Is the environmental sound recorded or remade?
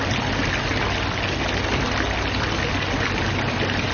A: recorded